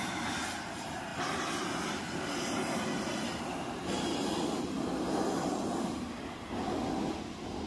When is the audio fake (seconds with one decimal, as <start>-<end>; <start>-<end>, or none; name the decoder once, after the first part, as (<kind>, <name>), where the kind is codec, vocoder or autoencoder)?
none